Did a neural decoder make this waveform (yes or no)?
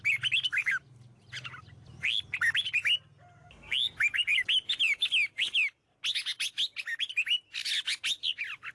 no